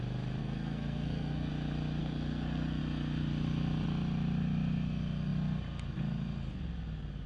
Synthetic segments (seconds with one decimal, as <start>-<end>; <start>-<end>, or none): 0.4-1.5; 2.0-2.8

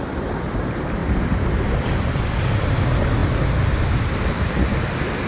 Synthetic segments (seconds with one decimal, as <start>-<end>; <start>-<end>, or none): none

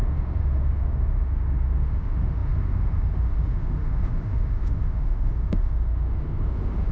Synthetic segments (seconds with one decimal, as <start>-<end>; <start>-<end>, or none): 0.0-6.9

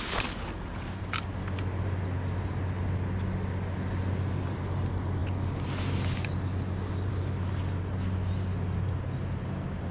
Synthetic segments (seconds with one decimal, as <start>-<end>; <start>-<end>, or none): none

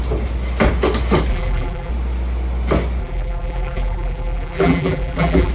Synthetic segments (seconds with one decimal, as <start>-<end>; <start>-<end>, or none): 1.3-1.9; 3.0-5.5

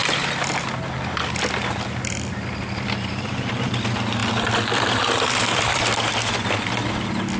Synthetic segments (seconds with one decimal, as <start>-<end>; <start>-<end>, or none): 2.0-7.4